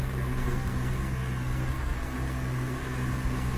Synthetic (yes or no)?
yes